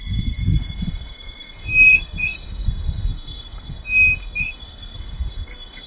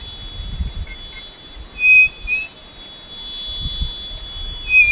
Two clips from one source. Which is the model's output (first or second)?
first